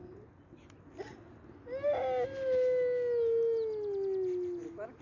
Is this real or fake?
real